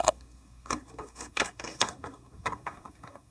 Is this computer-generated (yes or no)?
yes